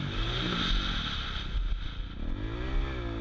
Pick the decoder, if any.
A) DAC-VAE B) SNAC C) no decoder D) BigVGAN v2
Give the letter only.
C